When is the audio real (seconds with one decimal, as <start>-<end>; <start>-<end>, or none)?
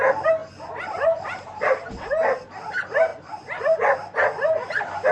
0.0-5.1